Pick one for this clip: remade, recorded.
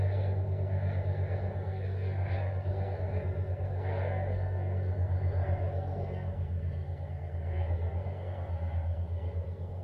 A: remade